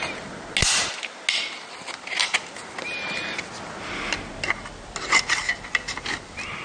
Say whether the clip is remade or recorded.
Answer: recorded